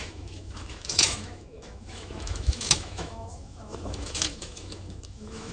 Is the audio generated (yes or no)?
yes